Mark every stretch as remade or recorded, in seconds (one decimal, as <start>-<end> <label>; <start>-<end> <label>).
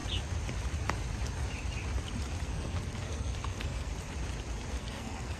0.0-2.4 recorded; 2.4-3.9 remade; 3.9-4.7 recorded; 4.7-5.4 remade